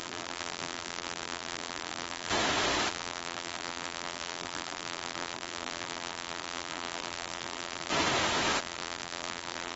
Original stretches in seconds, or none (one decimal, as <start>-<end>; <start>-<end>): 2.3-2.9; 7.9-8.6